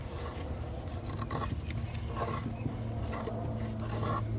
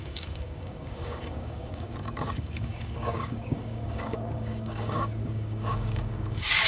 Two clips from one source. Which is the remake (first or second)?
second